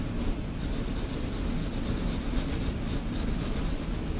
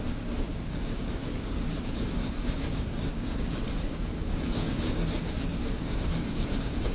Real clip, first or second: first